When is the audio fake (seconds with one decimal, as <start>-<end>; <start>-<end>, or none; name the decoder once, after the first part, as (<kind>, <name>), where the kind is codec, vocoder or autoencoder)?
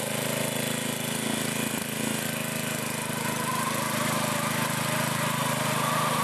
none